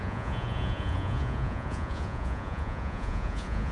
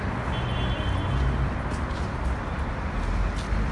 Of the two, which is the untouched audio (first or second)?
second